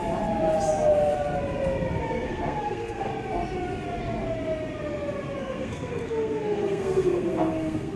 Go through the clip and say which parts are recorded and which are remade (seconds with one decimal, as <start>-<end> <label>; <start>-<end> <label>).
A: 0.0-2.0 recorded; 2.0-3.1 remade; 3.1-5.4 recorded; 5.4-8.0 remade